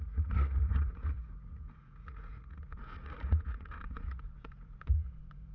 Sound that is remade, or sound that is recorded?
remade